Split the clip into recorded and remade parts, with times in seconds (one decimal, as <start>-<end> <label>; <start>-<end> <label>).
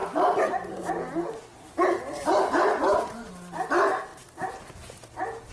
0.0-3.3 remade; 3.3-5.5 recorded